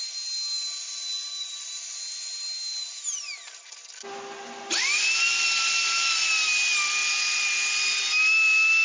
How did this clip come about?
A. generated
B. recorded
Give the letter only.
B